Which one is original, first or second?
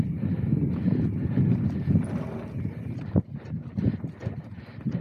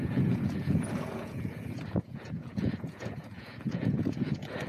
first